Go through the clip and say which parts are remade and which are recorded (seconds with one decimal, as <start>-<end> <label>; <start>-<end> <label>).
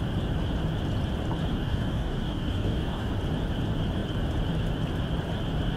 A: 0.0-1.5 recorded; 1.5-3.1 remade; 3.1-5.8 recorded